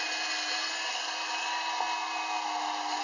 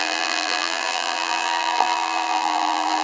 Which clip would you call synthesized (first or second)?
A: second